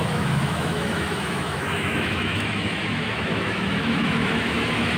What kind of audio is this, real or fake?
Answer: fake